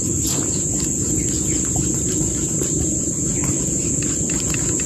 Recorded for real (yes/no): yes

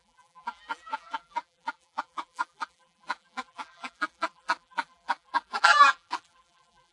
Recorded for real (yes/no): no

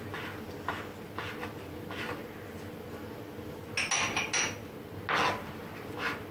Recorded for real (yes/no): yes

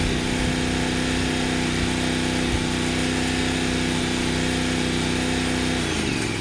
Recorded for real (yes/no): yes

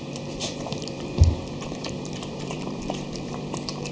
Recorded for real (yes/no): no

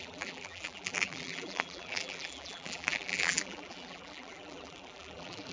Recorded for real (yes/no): no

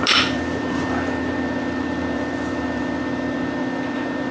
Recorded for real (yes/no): no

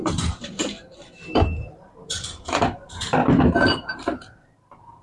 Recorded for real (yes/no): no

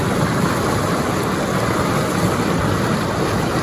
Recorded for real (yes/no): yes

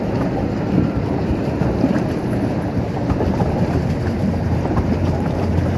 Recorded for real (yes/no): no